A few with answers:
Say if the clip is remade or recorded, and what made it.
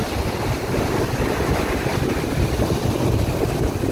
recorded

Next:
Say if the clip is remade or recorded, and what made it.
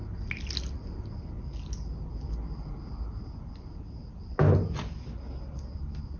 recorded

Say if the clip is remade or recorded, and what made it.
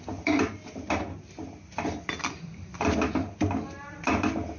recorded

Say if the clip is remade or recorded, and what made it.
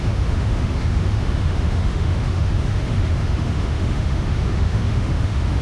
remade, autoencoder, DAC-VAE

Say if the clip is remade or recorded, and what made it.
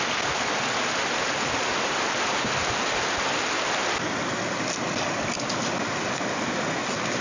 recorded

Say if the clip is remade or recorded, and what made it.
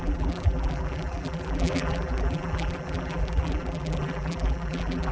remade, vocoder, BigVGAN v2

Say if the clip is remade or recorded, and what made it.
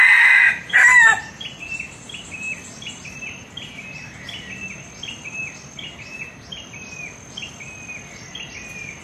recorded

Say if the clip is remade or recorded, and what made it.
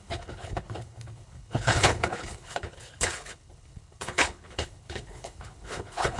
remade, codec, HILCodec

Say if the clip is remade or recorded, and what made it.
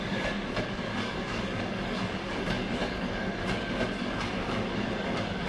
remade, codec, DAC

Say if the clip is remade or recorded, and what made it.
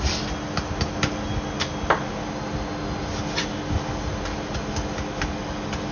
recorded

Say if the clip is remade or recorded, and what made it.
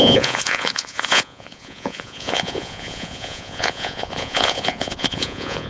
remade, vocoder, Vocos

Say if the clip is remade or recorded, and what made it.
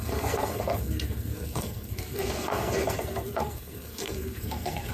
remade, codec, SNAC